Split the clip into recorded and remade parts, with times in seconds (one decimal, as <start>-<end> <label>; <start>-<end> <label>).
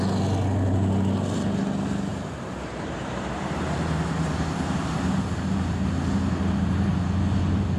0.0-2.1 recorded; 2.1-5.9 remade; 5.9-7.8 recorded